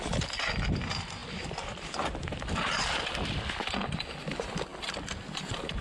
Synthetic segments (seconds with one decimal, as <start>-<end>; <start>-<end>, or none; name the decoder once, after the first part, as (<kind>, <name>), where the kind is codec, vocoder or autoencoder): none